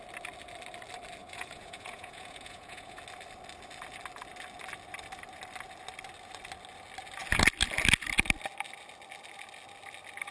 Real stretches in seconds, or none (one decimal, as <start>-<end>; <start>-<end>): 0.0-1.2; 3.0-10.3